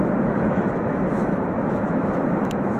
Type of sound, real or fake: fake